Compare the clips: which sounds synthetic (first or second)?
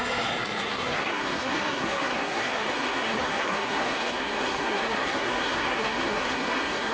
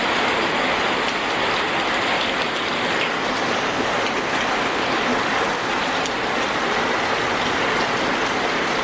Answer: first